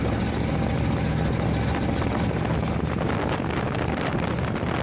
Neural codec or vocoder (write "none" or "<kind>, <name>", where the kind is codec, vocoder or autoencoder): none